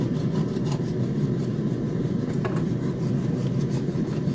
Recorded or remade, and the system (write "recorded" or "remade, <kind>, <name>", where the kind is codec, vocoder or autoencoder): recorded